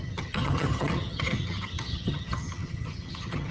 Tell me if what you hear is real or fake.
fake